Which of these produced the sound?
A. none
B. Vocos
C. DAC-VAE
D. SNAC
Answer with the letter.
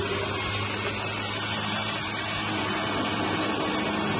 A